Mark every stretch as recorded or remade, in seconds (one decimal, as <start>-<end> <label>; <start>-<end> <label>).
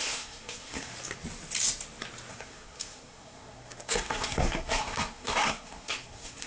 0.0-0.9 remade; 0.9-2.3 recorded; 2.3-6.5 remade